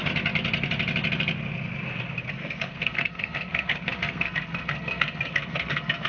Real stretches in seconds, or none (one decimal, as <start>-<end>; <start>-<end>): 0.0-2.3